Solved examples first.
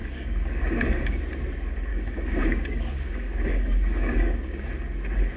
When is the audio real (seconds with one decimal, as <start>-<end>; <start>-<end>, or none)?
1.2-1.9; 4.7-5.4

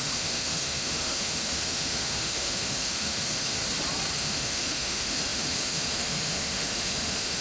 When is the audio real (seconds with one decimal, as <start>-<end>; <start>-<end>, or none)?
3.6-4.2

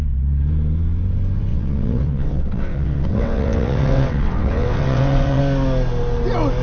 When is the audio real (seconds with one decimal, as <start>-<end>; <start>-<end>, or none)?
0.0-1.5; 5.4-6.6